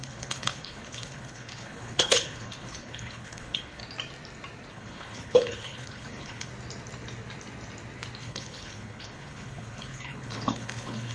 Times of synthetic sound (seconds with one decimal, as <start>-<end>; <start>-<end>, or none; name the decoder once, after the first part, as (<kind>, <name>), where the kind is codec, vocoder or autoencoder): 0.0-3.8 (codec, HILCodec); 4.7-6.5; 8.2-11.1